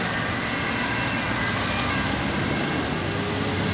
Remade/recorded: recorded